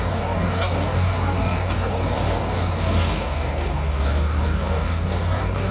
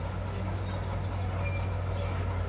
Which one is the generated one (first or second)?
first